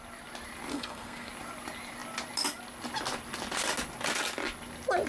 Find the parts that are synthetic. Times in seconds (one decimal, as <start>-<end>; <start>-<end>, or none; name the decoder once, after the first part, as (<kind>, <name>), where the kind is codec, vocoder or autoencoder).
0.7-1.3 (codec, SNAC)